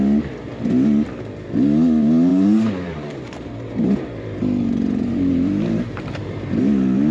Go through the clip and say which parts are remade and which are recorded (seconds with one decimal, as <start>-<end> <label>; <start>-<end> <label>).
0.0-2.3 recorded; 2.3-6.6 remade; 6.6-7.1 recorded